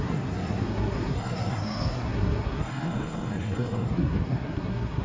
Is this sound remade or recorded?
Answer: remade